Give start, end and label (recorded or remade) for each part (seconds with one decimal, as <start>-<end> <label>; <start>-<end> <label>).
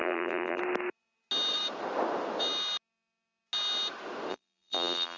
0.0-0.6 remade; 0.6-4.3 recorded; 4.3-5.2 remade